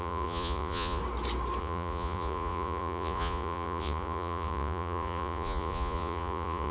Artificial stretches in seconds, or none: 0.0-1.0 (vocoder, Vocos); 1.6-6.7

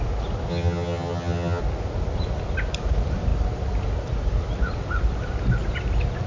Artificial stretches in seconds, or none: 0.5-1.6 (vocoder, HiFi-GAN)

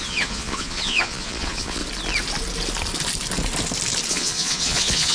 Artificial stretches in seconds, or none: 0.0-1.8 (vocoder, Vocos); 4.1-5.1

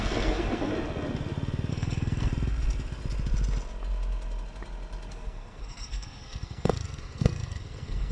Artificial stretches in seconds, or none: 0.0-0.7 (codec, SNAC); 1.7-2.3; 5.1-8.1